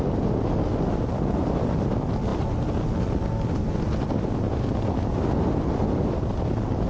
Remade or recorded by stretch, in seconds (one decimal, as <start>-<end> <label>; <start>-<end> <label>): 0.0-6.9 recorded